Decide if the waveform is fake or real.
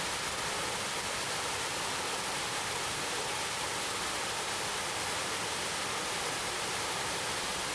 real